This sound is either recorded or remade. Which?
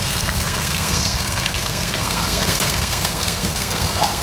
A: remade